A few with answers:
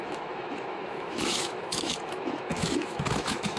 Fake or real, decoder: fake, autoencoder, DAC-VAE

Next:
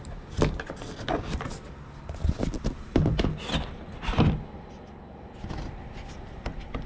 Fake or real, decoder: real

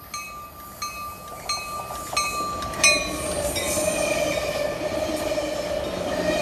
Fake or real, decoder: real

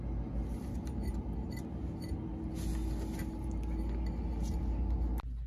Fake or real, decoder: real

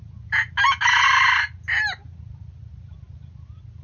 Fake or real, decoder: real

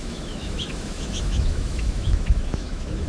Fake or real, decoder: fake, autoencoder, DAC-VAE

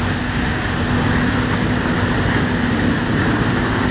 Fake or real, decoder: real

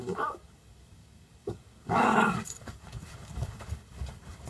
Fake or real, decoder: fake, codec, DAC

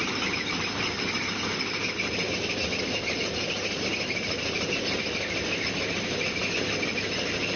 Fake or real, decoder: real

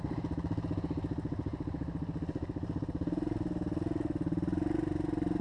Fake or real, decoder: real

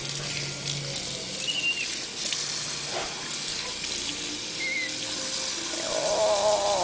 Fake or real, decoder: real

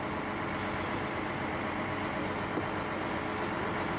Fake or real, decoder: real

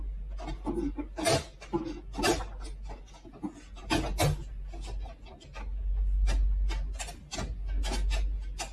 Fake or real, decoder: real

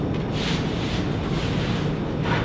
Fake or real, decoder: real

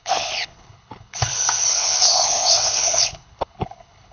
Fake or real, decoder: fake, codec, HILCodec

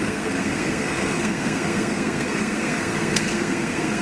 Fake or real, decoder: fake, codec, SNAC